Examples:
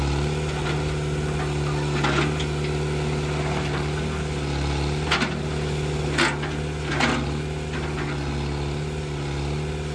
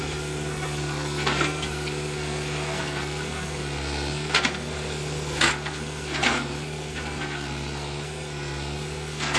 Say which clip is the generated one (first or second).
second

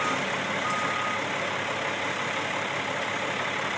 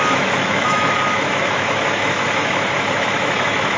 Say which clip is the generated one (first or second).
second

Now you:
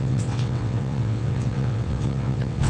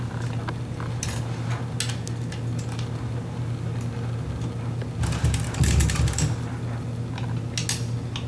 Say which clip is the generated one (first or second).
first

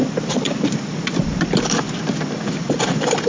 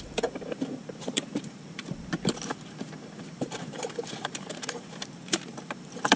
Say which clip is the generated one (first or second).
second